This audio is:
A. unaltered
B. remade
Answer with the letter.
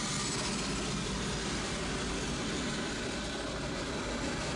A